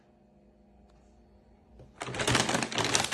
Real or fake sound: real